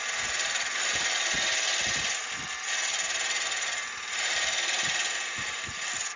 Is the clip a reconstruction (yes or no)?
no